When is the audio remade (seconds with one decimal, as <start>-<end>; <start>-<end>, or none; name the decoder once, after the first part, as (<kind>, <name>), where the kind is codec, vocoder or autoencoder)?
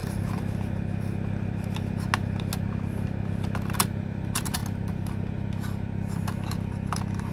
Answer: 3.8-4.6 (vocoder, BigVGAN v2); 6.7-7.3